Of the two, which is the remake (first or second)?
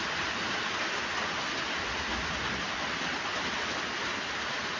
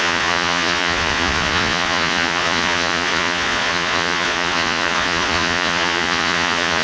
second